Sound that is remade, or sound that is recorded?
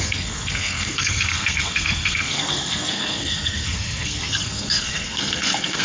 remade